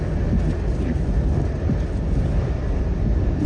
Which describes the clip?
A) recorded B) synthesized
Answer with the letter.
A